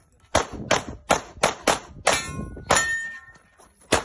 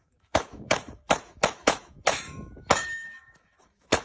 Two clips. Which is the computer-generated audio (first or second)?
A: second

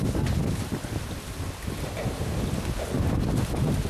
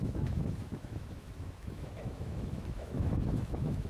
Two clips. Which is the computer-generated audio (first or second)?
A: second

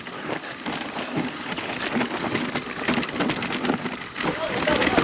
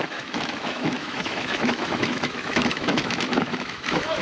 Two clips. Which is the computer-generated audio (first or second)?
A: second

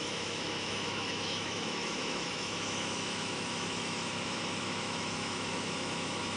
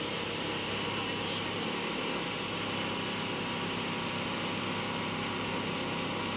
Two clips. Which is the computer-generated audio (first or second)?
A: first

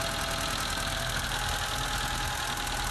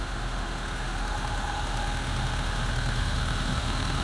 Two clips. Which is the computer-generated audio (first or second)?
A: second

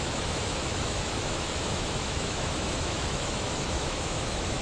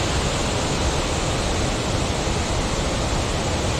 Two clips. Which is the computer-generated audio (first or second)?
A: first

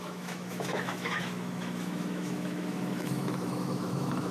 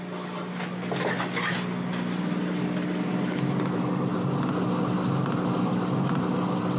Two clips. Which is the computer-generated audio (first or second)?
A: first